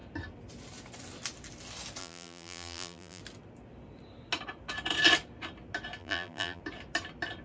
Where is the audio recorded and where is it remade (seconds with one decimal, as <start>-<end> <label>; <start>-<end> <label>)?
0.0-2.0 recorded; 2.0-3.2 remade; 3.2-6.0 recorded; 6.0-6.6 remade; 6.6-7.4 recorded